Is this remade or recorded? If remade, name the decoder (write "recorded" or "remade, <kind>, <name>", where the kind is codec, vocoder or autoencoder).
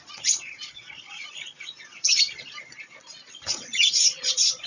remade, vocoder, Vocos